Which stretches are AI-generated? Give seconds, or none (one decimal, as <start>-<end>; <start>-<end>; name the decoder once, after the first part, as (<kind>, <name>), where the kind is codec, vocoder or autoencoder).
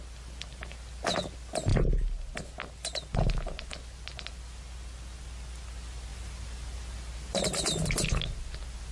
none